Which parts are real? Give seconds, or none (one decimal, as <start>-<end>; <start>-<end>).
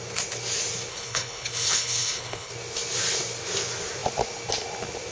0.0-0.9; 2.5-5.1